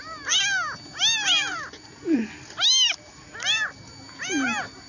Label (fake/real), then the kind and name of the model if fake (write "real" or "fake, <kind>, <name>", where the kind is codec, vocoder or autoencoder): real